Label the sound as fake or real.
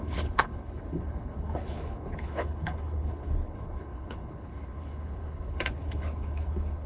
fake